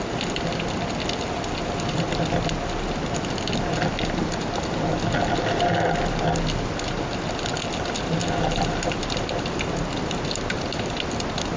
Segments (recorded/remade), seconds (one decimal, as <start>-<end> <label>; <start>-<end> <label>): 0.0-11.6 recorded